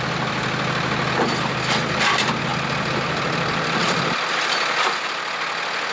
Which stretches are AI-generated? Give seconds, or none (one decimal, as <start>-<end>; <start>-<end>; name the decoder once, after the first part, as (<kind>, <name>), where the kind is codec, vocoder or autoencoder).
2.5-4.3 (vocoder, BigVGAN v2)